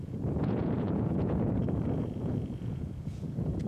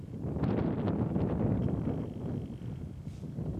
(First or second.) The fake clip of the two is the first